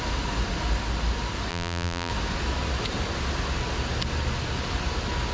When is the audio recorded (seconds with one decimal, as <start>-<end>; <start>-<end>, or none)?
0.0-1.5; 2.1-5.3